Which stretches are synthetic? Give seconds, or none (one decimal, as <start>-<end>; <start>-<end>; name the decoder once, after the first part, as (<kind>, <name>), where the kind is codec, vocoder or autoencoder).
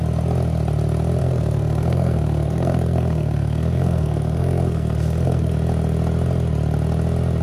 1.2-5.5 (codec, SNAC)